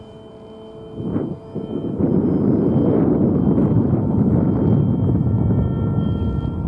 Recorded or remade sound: recorded